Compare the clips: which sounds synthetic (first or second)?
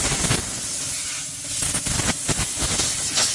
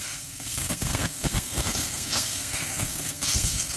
second